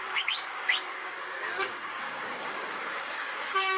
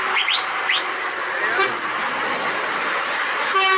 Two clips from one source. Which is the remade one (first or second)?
first